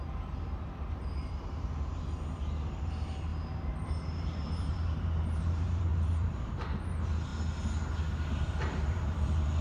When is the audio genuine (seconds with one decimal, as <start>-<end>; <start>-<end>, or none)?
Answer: 3.3-4.0; 7.3-8.3